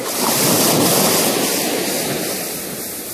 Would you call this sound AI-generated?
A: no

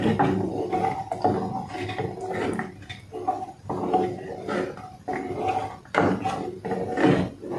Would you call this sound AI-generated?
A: no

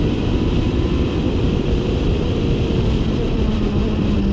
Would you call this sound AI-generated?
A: yes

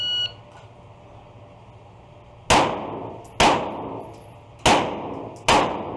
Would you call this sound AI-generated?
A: no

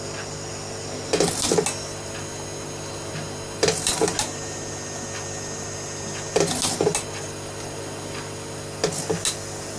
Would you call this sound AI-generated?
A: no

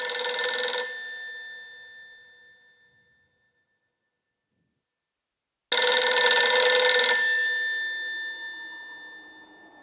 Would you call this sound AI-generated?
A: no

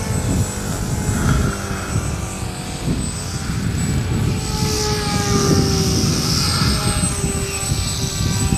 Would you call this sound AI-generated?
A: no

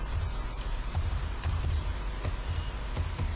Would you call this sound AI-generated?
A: yes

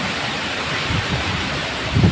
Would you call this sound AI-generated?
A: yes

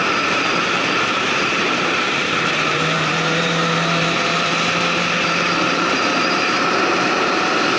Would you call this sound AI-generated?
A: yes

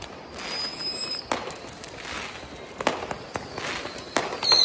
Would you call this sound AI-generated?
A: no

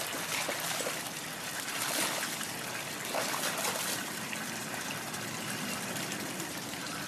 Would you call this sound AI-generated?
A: yes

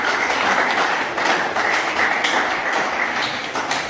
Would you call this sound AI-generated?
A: yes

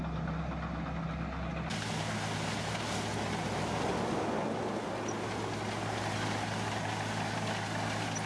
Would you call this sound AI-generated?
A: no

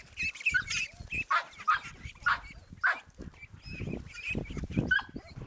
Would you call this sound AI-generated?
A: no